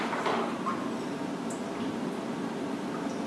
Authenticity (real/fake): real